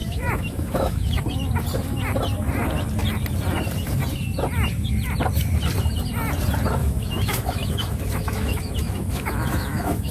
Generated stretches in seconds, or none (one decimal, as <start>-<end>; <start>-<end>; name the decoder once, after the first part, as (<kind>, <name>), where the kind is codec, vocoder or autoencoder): 0.0-1.2 (autoencoder, DAC-VAE); 6.8-10.1